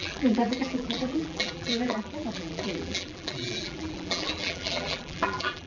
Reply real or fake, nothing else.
fake